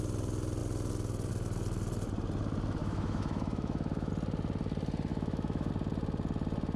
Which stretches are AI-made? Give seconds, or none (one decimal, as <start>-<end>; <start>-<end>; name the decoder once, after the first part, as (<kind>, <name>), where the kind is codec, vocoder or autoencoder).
2.8-4.1 (autoencoder, DAC-VAE); 5.1-5.7